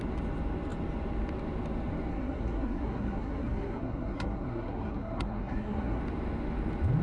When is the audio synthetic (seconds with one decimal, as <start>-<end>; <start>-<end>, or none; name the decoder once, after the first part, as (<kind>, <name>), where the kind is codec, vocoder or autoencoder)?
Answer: 2.1-6.0 (codec, SNAC)